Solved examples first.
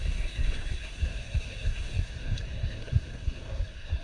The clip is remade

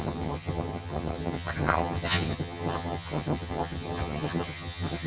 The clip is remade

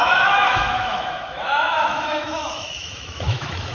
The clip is remade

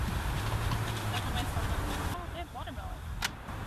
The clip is recorded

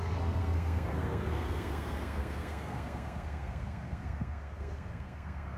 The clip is remade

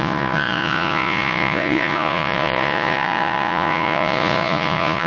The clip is remade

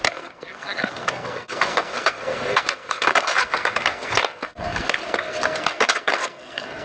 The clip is remade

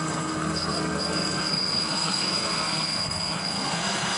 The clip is remade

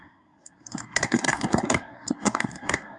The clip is remade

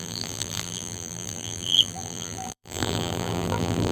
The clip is remade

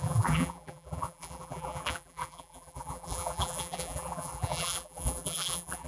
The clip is remade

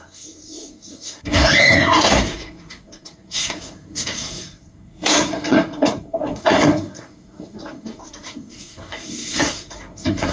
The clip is remade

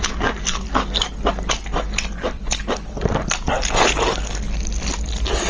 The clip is recorded